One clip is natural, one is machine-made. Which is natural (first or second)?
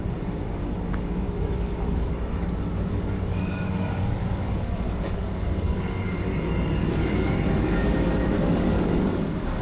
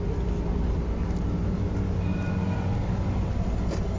second